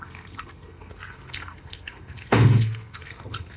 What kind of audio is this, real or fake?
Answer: fake